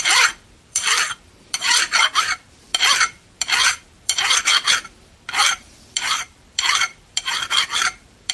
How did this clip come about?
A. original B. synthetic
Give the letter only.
B